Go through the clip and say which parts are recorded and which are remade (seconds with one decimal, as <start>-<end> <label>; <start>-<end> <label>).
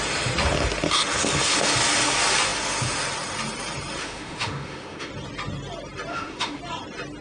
0.0-4.0 recorded; 4.0-5.1 remade; 5.1-6.1 recorded; 6.1-6.6 remade; 6.6-7.2 recorded